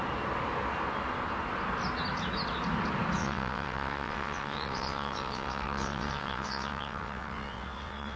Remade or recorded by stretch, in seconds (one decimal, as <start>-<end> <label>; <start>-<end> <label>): 0.0-3.2 recorded; 3.2-8.2 remade